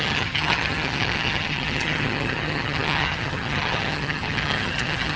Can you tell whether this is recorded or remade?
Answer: remade